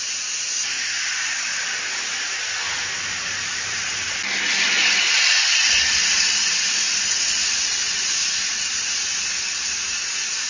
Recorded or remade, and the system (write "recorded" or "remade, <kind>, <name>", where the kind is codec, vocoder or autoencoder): recorded